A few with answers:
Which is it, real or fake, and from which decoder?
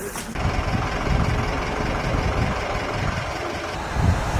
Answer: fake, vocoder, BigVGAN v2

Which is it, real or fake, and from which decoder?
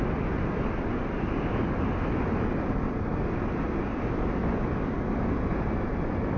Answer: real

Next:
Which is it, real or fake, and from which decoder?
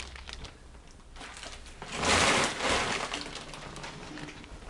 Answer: real